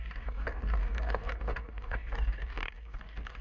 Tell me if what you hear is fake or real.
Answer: fake